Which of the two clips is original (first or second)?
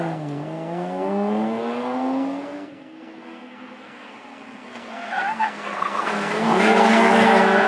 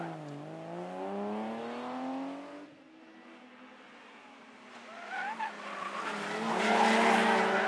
second